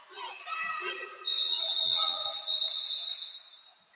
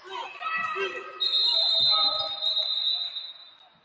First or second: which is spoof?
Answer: first